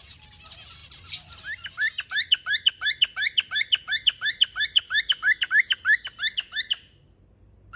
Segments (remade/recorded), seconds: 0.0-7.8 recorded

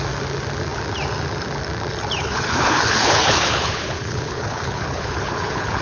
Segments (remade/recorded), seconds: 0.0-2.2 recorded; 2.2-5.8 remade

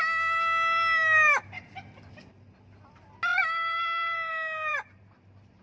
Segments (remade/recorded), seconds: 0.0-3.3 recorded; 3.3-4.3 remade; 4.3-4.7 recorded; 4.7-5.6 remade